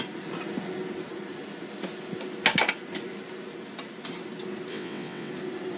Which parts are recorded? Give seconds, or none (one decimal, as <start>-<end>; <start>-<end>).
0.0-4.7; 5.3-5.8

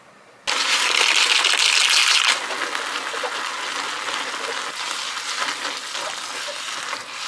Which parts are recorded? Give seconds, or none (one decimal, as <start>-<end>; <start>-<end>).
0.0-7.3

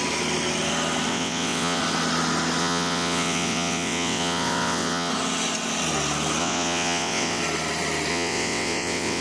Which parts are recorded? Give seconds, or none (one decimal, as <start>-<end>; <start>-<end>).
0.0-1.1; 1.8-2.6; 5.1-6.4; 7.4-8.1

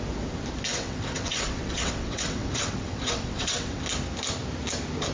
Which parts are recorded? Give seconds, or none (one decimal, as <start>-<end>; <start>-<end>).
0.0-0.7; 3.8-5.1